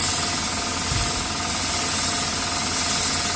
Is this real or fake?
real